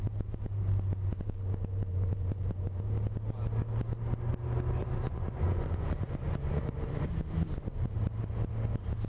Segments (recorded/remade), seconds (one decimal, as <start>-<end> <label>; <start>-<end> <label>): 0.0-1.9 recorded; 1.9-2.8 remade; 2.8-4.8 recorded; 4.8-7.1 remade; 7.1-9.1 recorded